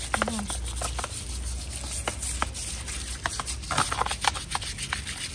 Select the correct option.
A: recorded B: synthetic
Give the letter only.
A